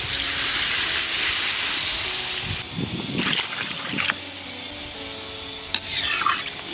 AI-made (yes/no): no